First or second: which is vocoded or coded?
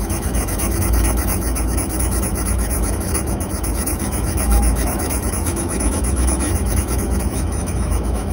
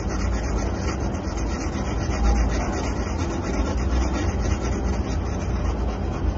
first